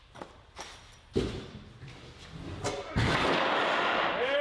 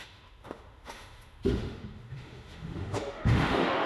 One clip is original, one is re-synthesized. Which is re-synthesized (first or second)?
second